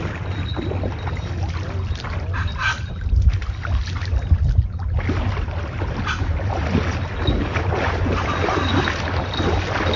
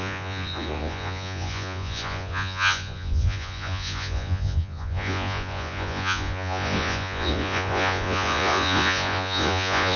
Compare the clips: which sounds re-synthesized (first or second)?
second